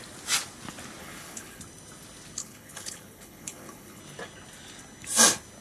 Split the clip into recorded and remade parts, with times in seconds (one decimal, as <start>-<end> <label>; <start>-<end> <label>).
0.0-1.0 recorded; 1.0-1.6 remade; 1.6-2.4 recorded; 2.4-4.0 remade; 4.0-5.6 recorded